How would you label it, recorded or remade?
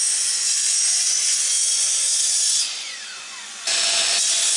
remade